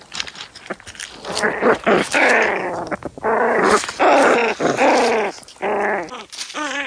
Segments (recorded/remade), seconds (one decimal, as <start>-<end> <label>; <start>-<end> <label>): 0.0-2.0 recorded; 2.0-3.6 remade; 3.6-6.9 recorded